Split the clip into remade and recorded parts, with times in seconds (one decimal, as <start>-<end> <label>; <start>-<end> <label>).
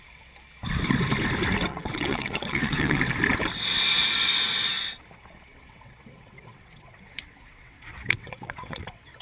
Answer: 0.0-1.7 recorded; 1.7-3.0 remade; 3.0-5.5 recorded; 5.5-9.2 remade